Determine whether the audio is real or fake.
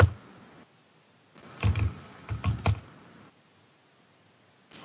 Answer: real